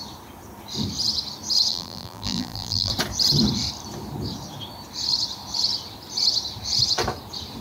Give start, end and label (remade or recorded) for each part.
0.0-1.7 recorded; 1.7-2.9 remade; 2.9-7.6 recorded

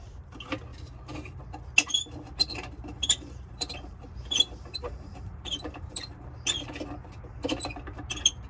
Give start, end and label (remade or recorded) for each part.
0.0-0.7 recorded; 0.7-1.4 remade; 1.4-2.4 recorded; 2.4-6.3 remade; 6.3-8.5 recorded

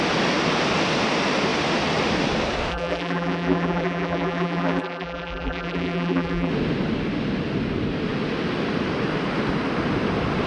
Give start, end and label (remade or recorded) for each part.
0.0-2.7 recorded; 2.7-6.5 remade; 6.5-10.5 recorded

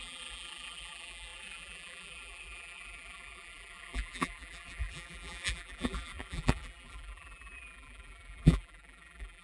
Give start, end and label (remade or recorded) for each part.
0.0-9.4 remade